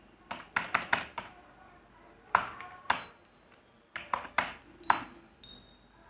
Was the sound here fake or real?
real